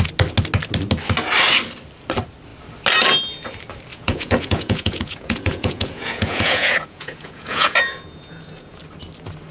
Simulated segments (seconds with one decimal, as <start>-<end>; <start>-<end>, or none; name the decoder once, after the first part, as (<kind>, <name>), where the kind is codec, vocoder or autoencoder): 3.9-8.8 (vocoder, Vocos)